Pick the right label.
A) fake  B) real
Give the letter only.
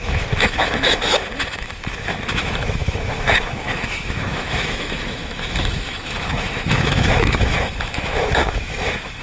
A